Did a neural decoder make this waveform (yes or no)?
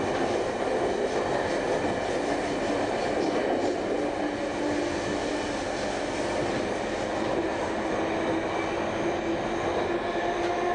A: no